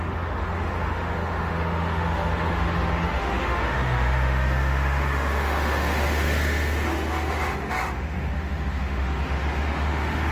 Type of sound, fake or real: fake